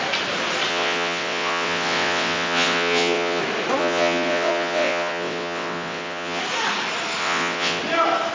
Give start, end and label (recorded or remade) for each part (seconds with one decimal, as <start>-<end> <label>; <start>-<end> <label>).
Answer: 0.0-0.7 recorded; 0.7-3.4 remade; 3.4-3.8 recorded; 3.8-6.4 remade; 6.4-7.2 recorded; 7.2-7.8 remade; 7.8-8.3 recorded